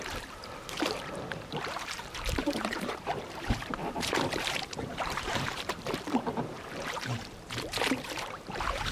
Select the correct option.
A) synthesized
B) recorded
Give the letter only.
A